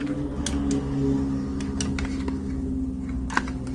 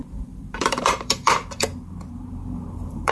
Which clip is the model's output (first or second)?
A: second